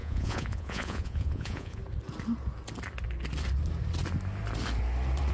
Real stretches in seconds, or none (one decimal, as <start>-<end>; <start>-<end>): 1.8-5.3